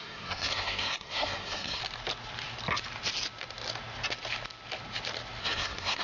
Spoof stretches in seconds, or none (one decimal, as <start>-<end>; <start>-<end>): 0.0-1.8; 5.4-6.0